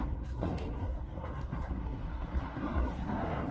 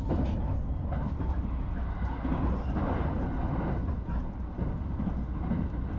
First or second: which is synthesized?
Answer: first